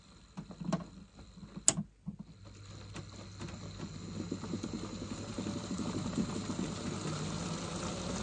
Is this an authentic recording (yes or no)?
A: yes